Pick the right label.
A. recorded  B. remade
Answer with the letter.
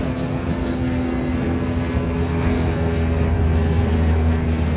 B